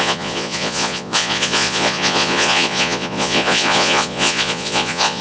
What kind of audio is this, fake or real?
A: fake